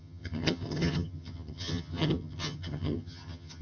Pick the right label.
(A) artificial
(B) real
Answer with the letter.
A